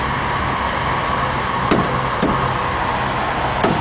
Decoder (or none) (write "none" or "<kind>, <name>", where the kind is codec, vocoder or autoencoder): none